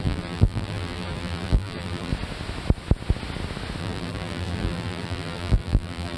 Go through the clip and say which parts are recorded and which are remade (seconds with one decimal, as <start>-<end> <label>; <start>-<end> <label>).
0.0-2.1 remade; 2.1-3.8 recorded; 3.8-6.2 remade